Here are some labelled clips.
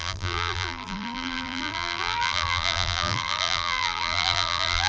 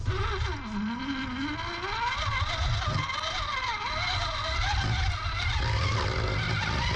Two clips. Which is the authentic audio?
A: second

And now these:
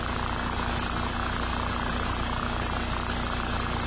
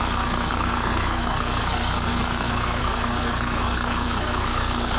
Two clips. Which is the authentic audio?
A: first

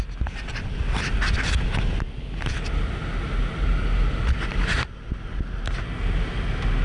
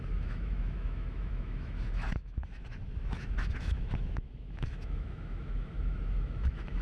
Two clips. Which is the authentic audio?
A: first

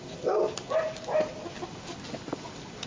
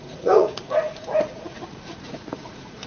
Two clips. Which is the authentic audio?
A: first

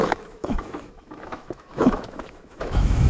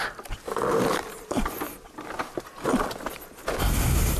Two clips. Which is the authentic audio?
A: second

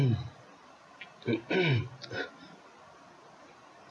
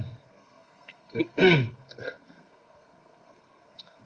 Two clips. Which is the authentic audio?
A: first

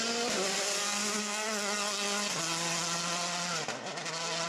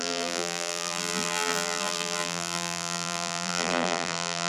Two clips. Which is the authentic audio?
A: first